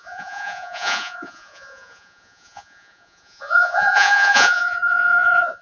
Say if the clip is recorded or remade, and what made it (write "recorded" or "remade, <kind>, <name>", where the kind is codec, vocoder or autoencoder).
remade, vocoder, Vocos